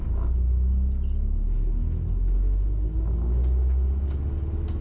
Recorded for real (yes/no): yes